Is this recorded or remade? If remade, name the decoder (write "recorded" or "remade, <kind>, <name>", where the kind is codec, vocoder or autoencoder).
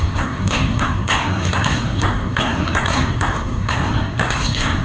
remade, codec, SNAC